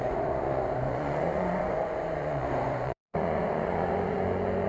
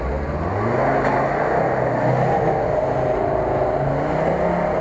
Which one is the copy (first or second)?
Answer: first